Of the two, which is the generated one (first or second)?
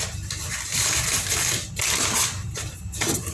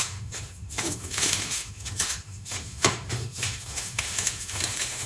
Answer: second